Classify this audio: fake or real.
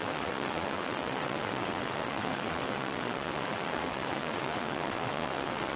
fake